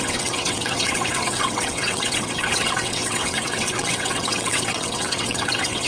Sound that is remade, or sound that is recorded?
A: remade